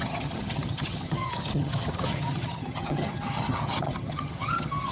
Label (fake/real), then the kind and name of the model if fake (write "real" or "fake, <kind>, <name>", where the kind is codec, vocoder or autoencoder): fake, vocoder, HiFi-GAN